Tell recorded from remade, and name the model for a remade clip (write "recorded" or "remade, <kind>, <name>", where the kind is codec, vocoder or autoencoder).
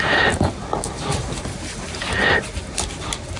recorded